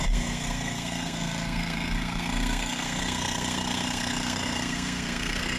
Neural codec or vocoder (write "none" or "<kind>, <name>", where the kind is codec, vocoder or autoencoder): codec, SNAC